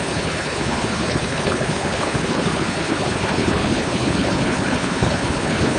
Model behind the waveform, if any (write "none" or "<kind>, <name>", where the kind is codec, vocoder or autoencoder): codec, HILCodec